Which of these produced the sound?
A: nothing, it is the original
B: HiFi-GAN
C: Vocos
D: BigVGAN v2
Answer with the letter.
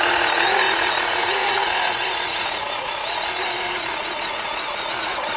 C